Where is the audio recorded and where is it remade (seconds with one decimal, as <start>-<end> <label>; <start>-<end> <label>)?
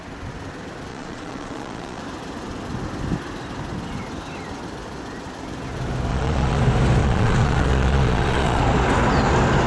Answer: 0.0-0.9 recorded; 0.9-2.0 remade; 2.0-6.1 recorded; 6.1-6.6 remade; 6.6-7.0 recorded; 7.0-8.6 remade; 8.6-9.7 recorded